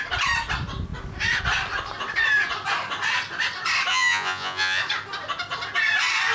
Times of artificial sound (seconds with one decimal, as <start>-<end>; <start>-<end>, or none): 3.9-4.8